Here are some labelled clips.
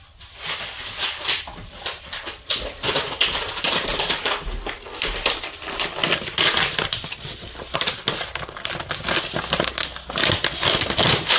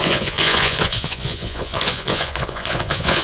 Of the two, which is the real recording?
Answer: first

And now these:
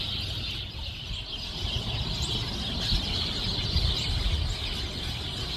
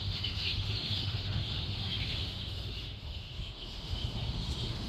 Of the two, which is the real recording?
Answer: first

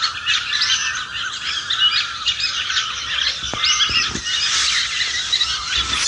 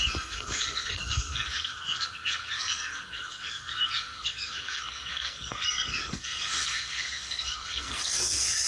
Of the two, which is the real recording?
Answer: first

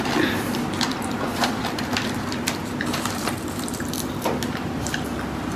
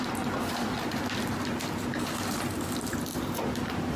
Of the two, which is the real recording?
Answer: second